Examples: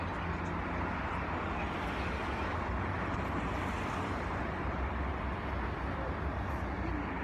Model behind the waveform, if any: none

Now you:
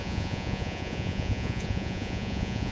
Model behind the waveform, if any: vocoder, Vocos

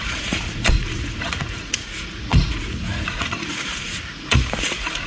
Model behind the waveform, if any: vocoder, Vocos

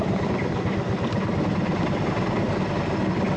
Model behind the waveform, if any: none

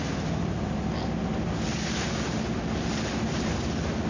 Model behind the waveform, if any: none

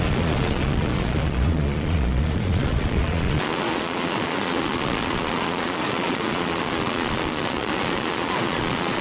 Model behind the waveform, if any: vocoder, Vocos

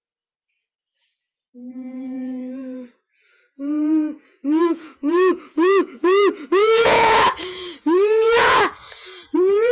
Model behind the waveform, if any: vocoder, Vocos